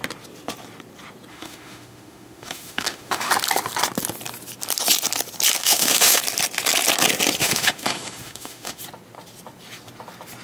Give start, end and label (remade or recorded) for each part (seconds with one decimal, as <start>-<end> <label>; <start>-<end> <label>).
0.0-1.3 recorded; 1.3-3.3 remade; 3.3-5.6 recorded; 5.6-6.2 remade; 6.2-7.4 recorded; 7.4-8.8 remade; 8.8-10.4 recorded